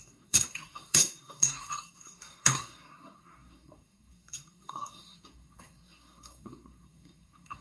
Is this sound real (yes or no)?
no